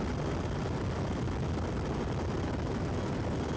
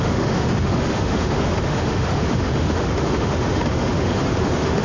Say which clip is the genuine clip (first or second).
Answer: first